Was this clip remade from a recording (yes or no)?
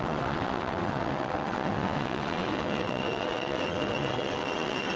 yes